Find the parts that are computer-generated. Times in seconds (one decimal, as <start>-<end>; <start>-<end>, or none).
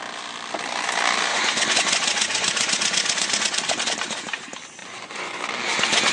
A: 1.3-3.6; 4.8-5.4